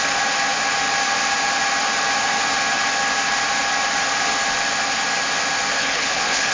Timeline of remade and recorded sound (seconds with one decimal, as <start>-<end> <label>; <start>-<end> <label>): 0.0-5.8 recorded; 5.8-6.5 remade